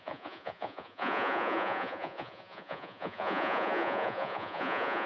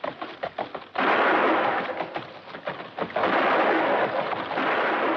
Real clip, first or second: second